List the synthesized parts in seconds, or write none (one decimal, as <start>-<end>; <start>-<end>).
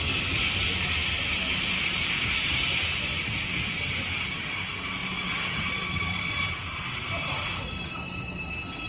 none